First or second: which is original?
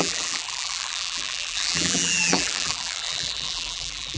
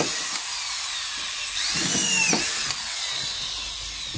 second